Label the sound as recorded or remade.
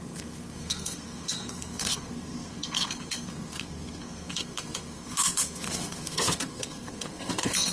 remade